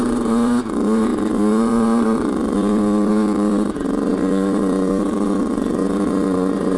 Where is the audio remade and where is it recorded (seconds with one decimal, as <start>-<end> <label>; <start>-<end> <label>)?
0.0-6.8 remade